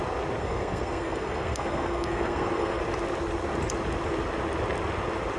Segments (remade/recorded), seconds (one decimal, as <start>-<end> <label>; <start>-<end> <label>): 0.0-0.4 recorded; 0.4-2.8 remade; 2.8-5.4 recorded